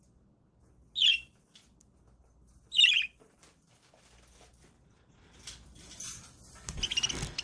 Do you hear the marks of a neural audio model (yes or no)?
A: no